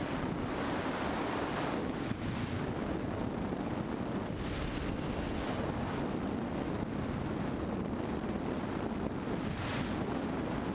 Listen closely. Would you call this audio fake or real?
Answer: real